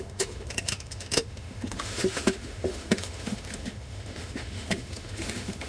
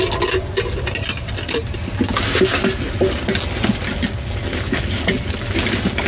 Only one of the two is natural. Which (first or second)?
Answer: second